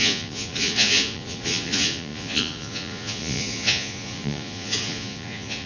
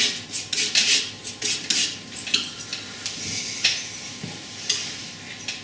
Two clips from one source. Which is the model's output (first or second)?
first